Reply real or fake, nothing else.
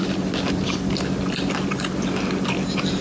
real